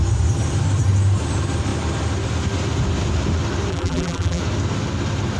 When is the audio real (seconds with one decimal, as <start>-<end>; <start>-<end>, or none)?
0.0-3.7; 4.4-5.4